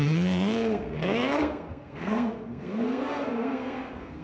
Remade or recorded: remade